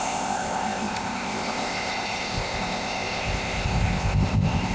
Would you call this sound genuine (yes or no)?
no